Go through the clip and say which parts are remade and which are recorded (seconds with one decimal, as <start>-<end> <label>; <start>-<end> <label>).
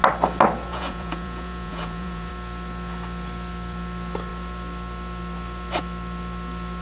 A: 0.0-0.7 recorded; 0.7-2.3 remade; 2.3-6.8 recorded